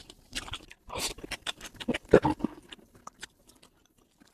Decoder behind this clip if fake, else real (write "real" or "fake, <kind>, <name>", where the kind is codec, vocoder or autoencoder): fake, vocoder, BigVGAN v2